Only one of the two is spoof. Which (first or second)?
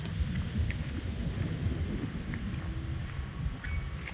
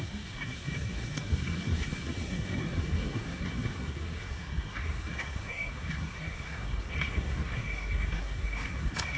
second